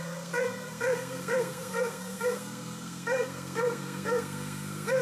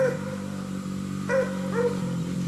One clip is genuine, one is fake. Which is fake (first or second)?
first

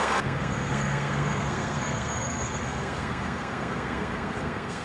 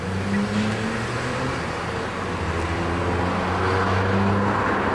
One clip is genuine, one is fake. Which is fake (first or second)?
first